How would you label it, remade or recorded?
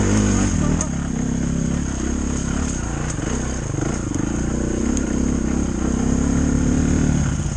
recorded